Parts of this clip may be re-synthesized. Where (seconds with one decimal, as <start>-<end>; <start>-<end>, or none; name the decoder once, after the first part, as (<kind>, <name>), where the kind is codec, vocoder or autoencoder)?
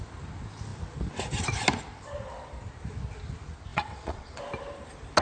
3.7-4.4 (vocoder, WaveNeXt)